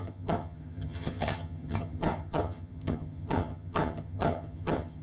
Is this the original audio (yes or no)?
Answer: no